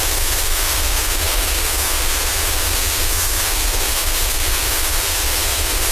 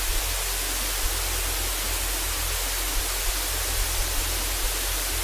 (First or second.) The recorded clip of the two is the second